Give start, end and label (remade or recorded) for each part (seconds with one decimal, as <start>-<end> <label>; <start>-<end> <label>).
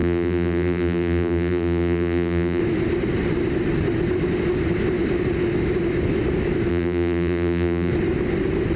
0.0-2.6 remade; 2.6-6.7 recorded; 6.7-7.9 remade; 7.9-8.8 recorded